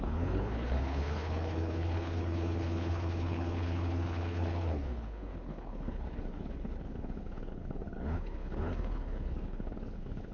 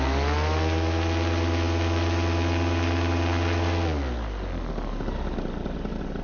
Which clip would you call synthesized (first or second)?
first